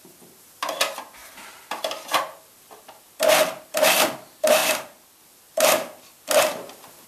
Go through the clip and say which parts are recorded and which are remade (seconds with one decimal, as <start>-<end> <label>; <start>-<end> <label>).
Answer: 0.0-4.6 recorded; 4.6-5.2 remade; 5.2-7.1 recorded